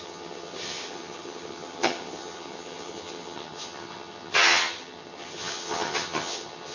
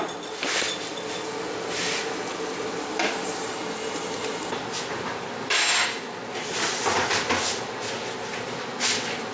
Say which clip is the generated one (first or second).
first